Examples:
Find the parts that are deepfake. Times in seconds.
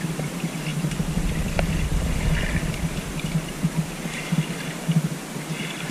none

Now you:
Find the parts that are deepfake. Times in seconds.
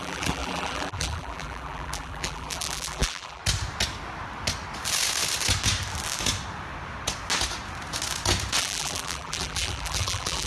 0.0-3.4 (vocoder, BigVGAN v2); 8.6-10.5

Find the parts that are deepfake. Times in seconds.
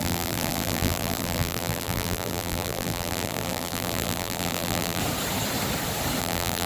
0.0-5.0 (vocoder, BigVGAN v2); 6.2-6.7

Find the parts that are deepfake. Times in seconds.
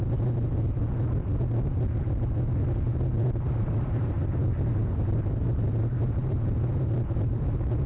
2.9-7.9 (vocoder, BigVGAN v2)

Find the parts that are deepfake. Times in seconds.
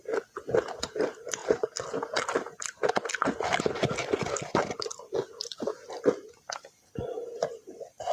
none